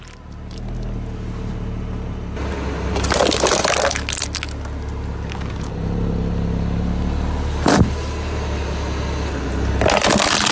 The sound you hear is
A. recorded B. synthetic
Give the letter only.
A